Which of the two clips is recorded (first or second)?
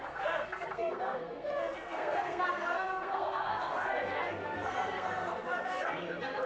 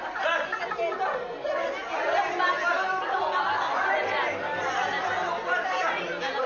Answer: second